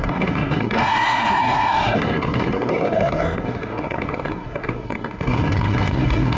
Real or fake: fake